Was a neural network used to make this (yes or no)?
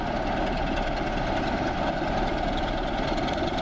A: no